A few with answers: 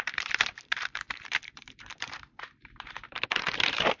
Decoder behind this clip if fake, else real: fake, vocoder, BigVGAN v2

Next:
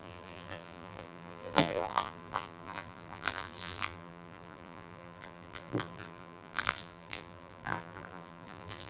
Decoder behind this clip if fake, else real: fake, vocoder, BigVGAN v2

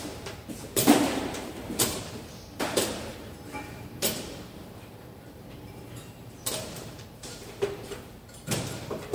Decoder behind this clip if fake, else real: fake, vocoder, BigVGAN v2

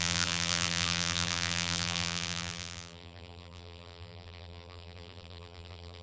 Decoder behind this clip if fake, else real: fake, vocoder, BigVGAN v2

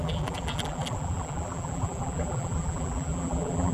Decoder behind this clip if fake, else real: fake, vocoder, BigVGAN v2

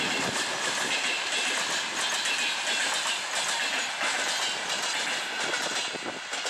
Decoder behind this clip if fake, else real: real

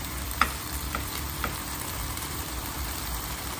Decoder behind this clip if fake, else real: fake, vocoder, BigVGAN v2